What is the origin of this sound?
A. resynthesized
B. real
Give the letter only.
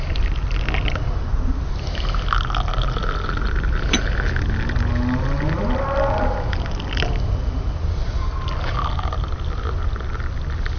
B